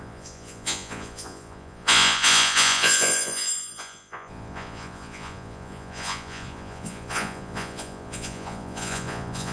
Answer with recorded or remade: remade